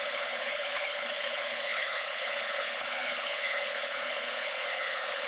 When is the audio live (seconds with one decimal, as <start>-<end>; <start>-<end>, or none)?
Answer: none